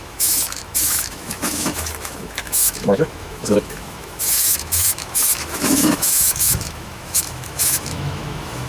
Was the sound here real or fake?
fake